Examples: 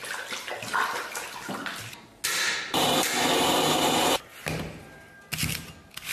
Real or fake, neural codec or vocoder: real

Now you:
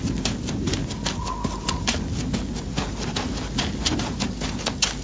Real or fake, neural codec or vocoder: real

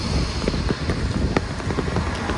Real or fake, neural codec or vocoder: real